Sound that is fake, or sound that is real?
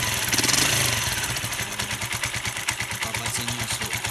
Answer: real